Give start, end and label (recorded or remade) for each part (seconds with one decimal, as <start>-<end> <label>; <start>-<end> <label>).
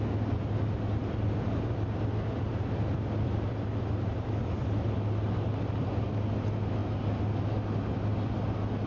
0.0-1.0 recorded; 1.0-6.1 remade; 6.1-8.9 recorded